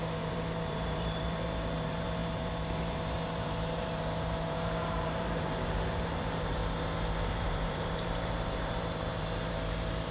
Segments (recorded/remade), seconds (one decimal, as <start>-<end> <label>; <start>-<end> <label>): 0.0-6.6 remade; 6.6-7.3 recorded; 7.3-10.1 remade